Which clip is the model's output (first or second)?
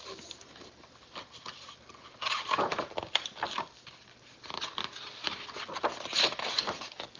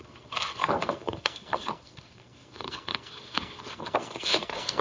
second